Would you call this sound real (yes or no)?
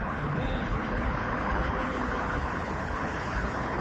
no